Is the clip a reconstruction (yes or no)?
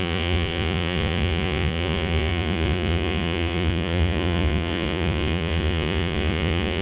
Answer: yes